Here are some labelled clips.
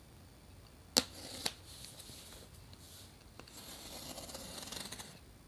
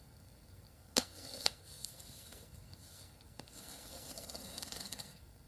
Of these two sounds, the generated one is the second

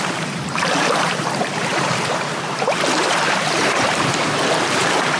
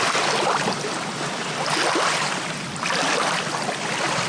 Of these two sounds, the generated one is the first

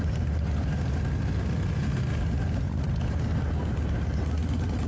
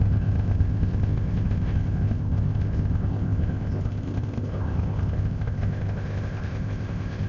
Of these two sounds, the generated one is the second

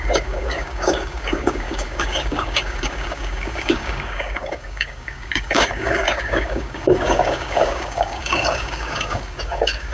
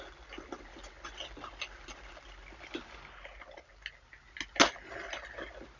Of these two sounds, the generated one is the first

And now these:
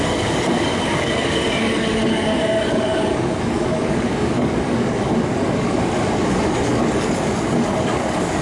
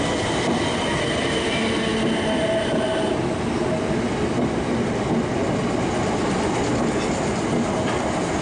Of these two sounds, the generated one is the first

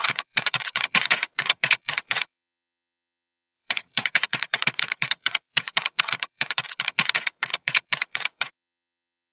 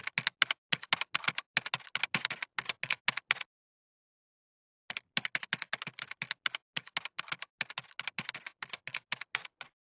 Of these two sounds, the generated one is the first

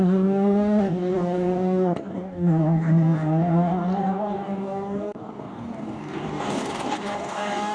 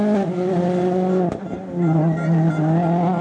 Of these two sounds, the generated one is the first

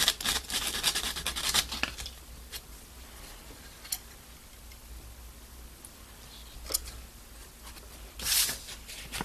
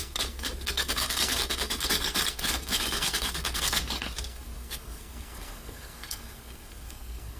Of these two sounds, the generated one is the second